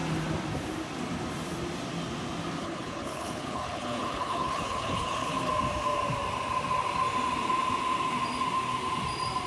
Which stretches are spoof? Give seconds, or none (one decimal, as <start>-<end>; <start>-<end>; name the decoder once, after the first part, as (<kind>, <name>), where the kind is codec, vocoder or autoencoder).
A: 2.6-5.5 (codec, HILCodec)